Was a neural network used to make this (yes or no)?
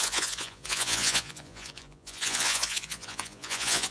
yes